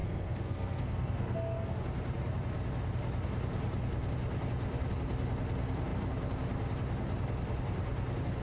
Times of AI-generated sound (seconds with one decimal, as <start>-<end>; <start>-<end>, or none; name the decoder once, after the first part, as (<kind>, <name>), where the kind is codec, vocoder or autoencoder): 0.0-1.7 (codec, SNAC)